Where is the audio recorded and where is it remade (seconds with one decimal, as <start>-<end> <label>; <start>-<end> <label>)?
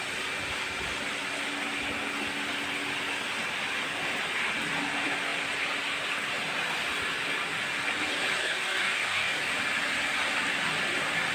0.0-8.4 recorded; 8.4-9.5 remade; 9.5-11.3 recorded